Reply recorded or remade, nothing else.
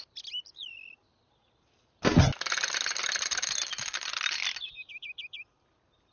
recorded